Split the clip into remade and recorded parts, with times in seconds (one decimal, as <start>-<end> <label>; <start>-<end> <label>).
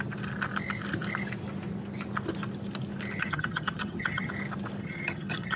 0.0-3.2 recorded; 3.2-4.3 remade; 4.3-4.8 recorded; 4.8-5.6 remade